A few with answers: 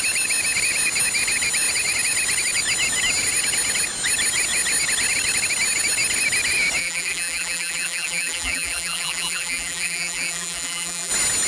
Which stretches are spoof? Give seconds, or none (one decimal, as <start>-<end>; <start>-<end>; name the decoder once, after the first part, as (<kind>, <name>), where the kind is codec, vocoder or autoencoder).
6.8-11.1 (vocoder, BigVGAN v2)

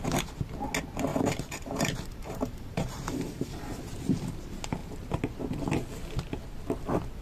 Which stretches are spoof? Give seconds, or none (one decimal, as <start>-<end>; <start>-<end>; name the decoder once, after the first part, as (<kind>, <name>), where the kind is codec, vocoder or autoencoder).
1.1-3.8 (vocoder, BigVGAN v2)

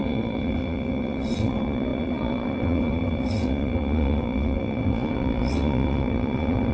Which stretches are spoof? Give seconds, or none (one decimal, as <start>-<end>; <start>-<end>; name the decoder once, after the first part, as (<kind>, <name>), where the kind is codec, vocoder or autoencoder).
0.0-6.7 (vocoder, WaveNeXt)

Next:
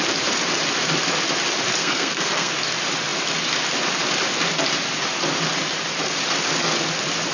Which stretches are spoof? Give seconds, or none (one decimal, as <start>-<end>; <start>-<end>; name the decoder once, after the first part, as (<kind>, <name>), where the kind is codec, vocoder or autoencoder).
1.8-2.5 (codec, SNAC)